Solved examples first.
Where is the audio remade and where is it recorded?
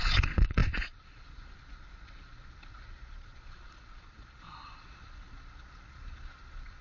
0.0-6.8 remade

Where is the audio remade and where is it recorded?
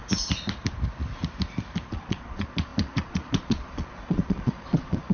0.0-1.9 recorded; 1.9-5.1 remade